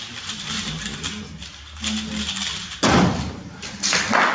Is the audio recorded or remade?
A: recorded